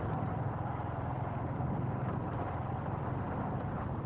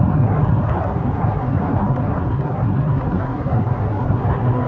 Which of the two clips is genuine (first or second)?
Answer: first